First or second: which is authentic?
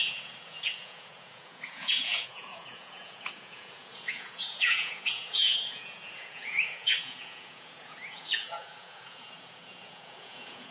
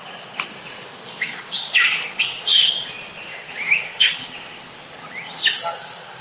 second